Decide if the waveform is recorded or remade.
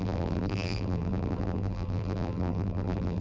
remade